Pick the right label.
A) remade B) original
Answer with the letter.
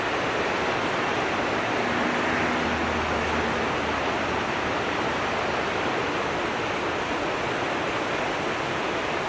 B